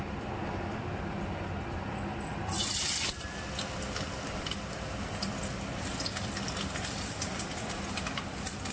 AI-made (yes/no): no